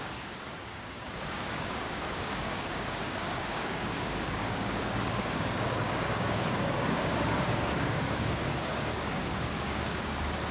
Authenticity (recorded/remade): remade